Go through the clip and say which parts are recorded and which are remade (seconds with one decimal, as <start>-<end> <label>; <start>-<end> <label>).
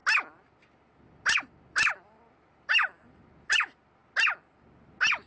0.0-5.3 recorded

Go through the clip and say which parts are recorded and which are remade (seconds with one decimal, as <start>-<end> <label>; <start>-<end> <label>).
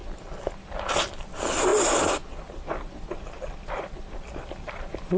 0.0-5.2 recorded